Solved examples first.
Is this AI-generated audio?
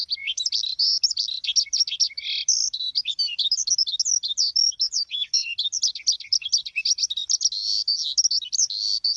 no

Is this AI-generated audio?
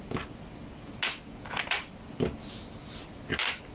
no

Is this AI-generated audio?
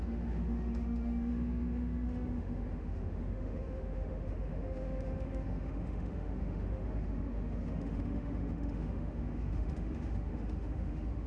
yes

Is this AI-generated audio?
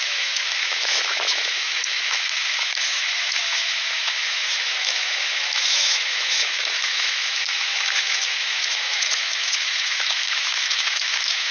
yes